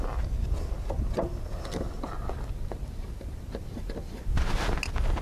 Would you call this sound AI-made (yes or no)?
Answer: no